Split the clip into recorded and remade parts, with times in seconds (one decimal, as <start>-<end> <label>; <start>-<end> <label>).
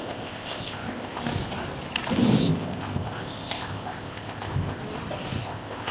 0.0-1.2 remade; 1.2-2.4 recorded; 2.4-4.8 remade; 4.8-5.4 recorded; 5.4-5.9 remade